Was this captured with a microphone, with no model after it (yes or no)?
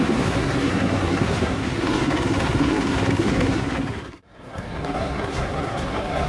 no